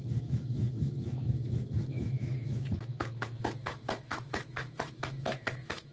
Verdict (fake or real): fake